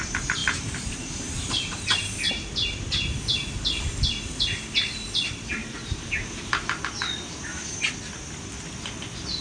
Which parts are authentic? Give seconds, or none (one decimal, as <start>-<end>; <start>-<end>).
0.0-0.4; 2.3-5.6; 6.8-9.4